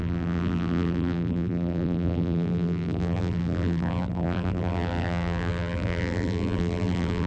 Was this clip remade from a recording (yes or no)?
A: yes